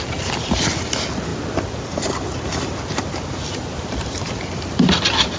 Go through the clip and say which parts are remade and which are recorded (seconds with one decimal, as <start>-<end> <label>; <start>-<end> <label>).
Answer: 0.0-5.4 recorded